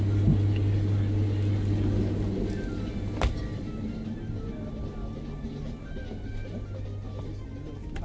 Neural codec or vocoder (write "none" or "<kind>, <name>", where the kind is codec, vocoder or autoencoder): none